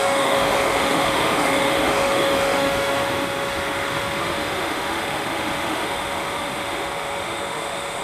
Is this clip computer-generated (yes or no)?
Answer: yes